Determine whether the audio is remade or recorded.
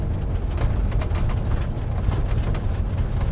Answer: recorded